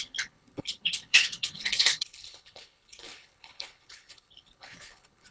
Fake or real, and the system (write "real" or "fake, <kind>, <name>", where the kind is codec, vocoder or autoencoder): fake, codec, HILCodec